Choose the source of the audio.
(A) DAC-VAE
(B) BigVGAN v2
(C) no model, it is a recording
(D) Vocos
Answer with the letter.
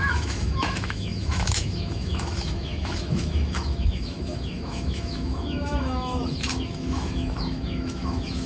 A